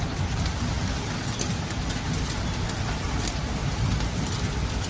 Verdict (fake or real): real